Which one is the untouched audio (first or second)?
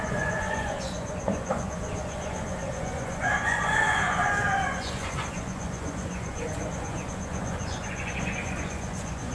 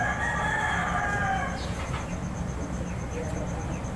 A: second